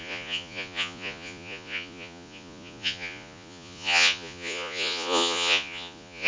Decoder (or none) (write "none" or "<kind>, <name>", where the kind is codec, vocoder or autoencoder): vocoder, Vocos